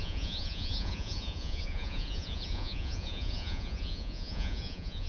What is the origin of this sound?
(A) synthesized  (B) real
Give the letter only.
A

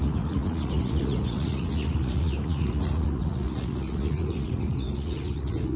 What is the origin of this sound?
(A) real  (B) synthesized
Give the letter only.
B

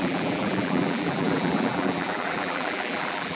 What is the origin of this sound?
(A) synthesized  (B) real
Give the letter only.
A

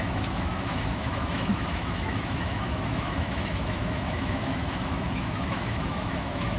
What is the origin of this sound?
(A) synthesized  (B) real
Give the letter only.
A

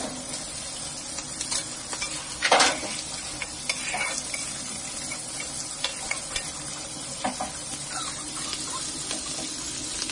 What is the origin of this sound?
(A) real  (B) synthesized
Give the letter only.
A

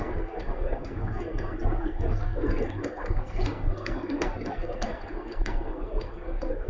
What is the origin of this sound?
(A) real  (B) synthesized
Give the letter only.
B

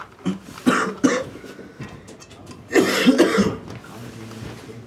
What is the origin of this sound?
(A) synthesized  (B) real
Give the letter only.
B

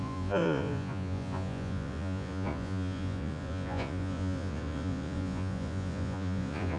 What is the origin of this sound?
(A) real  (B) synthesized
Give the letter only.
B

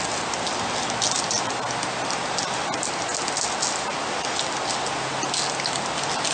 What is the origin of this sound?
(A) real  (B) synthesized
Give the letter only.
A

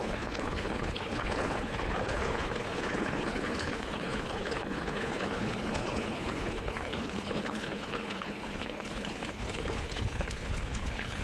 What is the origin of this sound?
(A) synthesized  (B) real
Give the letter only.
A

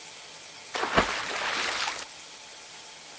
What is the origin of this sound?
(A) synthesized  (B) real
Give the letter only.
B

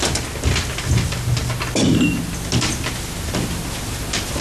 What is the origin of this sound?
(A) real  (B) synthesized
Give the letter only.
A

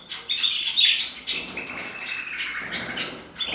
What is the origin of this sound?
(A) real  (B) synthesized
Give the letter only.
A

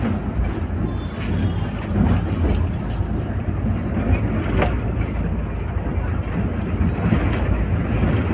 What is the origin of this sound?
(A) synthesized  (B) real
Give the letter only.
B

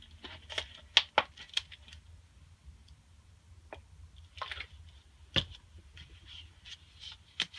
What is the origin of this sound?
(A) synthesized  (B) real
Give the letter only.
B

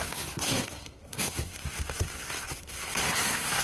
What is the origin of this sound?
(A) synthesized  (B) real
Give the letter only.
A